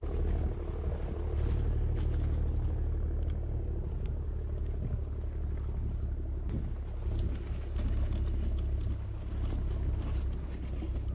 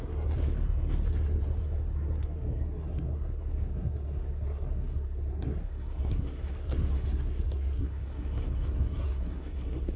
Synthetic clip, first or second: second